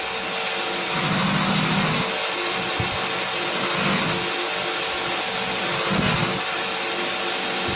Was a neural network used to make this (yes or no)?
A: no